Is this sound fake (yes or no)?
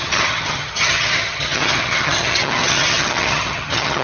yes